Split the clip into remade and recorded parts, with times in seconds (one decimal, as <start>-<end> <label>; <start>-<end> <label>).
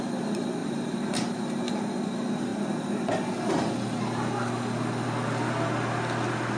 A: 0.0-0.6 recorded; 0.6-1.6 remade; 1.6-6.6 recorded